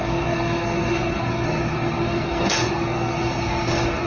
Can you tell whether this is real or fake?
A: fake